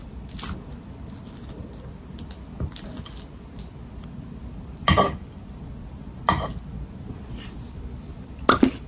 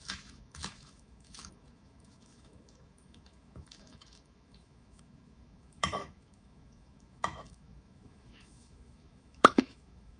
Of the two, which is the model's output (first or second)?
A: second